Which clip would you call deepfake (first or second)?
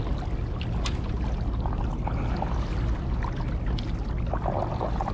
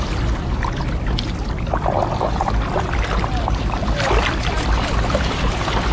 second